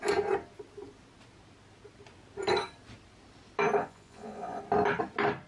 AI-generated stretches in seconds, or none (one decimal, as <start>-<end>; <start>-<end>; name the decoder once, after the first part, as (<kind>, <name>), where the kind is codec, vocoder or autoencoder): 3.8-4.6 (vocoder, Vocos)